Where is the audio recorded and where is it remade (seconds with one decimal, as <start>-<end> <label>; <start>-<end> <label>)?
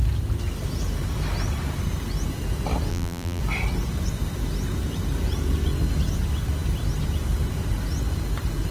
0.0-2.9 recorded; 2.9-3.4 remade; 3.4-8.7 recorded